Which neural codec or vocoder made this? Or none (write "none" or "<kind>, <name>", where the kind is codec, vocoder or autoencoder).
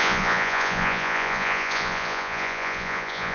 vocoder, Vocos